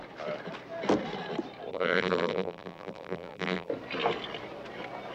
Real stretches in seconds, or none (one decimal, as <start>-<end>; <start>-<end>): 0.0-1.7; 3.7-5.1